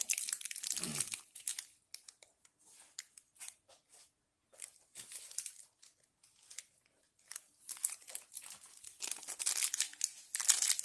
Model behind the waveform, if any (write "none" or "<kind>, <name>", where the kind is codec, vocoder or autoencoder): none